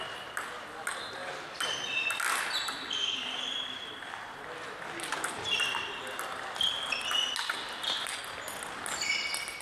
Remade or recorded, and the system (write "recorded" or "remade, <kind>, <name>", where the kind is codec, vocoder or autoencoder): recorded